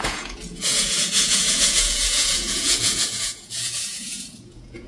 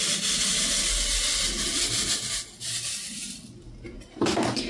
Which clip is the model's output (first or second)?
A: first